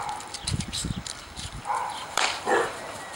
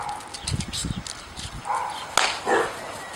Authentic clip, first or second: second